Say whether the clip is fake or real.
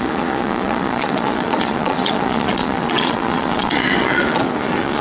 fake